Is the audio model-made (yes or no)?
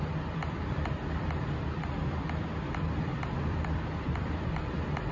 yes